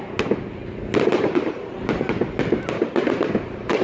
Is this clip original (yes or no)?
yes